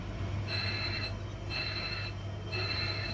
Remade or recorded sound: recorded